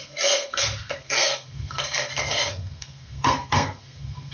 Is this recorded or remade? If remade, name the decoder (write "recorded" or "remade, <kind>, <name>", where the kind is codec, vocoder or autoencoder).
remade, codec, SNAC